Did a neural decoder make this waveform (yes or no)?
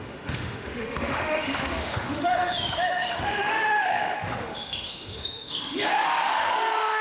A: yes